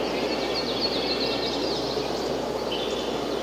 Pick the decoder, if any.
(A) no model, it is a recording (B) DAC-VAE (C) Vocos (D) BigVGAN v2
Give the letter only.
A